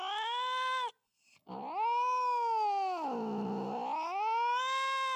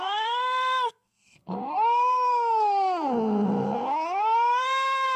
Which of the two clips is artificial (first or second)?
second